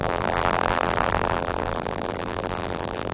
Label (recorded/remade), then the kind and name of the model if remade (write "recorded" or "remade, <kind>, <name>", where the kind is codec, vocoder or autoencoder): remade, vocoder, BigVGAN v2